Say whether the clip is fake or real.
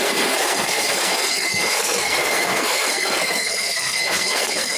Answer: fake